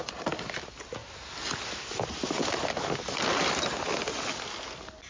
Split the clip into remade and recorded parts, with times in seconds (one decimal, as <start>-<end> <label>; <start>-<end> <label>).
0.0-5.1 recorded